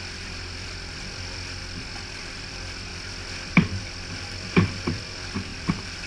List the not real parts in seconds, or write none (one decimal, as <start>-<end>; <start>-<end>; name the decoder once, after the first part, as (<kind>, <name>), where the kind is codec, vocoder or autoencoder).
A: 0.0-2.9 (vocoder, BigVGAN v2); 3.5-6.1

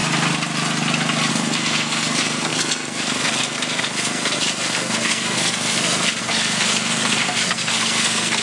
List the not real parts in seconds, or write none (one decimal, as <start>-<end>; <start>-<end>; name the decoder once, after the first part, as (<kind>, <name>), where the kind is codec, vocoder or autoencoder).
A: 1.3-8.4 (codec, SNAC)

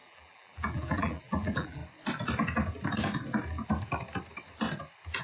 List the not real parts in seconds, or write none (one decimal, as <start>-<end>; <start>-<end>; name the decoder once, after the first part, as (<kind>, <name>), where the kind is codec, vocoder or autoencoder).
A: 0.0-1.8 (vocoder, BigVGAN v2)

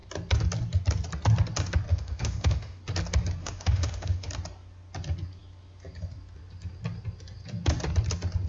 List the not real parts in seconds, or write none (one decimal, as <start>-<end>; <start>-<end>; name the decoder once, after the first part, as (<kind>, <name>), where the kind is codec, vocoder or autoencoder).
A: 1.9-2.8 (autoencoder, DAC-VAE); 3.4-4.3

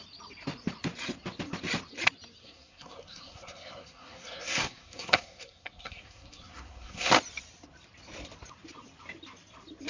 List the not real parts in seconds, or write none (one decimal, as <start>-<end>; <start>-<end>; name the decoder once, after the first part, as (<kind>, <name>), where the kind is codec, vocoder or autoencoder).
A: 2.4-7.1 (codec, SNAC)